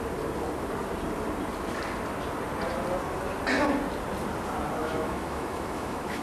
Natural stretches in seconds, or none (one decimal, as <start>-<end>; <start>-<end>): 0.0-4.8